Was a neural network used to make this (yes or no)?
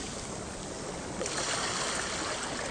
no